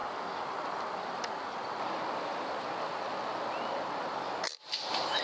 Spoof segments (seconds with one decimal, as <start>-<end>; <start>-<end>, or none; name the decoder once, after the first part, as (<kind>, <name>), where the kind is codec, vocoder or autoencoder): none